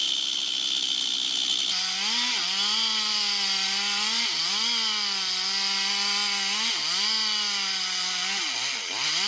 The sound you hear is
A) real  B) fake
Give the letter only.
A